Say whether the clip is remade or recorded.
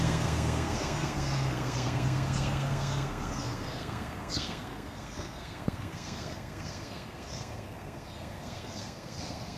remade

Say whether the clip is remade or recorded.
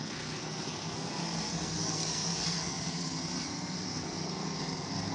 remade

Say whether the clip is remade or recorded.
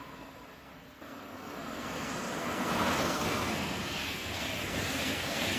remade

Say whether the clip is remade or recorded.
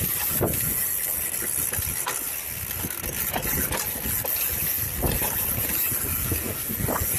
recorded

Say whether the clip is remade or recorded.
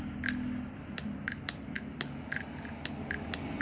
recorded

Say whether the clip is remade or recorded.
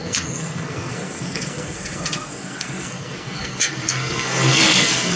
remade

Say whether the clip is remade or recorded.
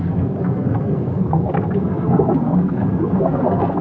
remade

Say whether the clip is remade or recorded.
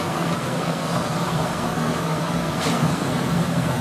remade